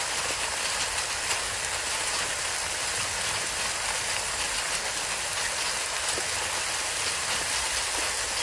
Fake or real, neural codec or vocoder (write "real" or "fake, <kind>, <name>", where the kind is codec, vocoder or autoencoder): real